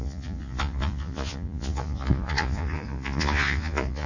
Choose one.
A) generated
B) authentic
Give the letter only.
A